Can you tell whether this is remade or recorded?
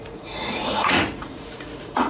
remade